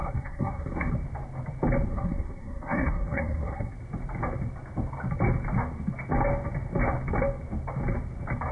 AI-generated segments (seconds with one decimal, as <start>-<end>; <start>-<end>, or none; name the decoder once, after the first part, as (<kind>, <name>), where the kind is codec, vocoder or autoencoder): 0.0-0.9 (codec, SNAC); 1.9-3.7